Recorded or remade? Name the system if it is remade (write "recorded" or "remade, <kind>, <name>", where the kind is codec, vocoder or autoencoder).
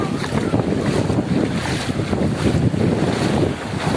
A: recorded